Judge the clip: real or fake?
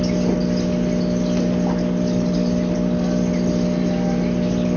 fake